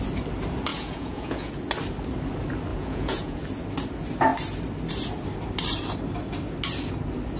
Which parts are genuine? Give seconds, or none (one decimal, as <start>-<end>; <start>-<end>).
0.0-0.7; 1.5-2.7; 3.4-7.4